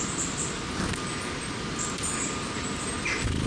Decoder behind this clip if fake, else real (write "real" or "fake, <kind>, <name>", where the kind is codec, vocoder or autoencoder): real